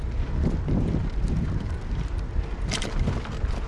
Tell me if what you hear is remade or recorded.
recorded